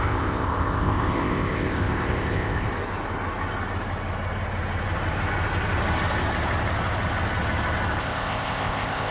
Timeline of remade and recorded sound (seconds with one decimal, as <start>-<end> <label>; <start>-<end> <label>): 0.0-2.7 remade; 2.7-8.0 recorded; 8.0-9.1 remade